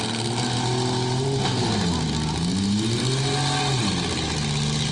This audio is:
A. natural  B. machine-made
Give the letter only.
A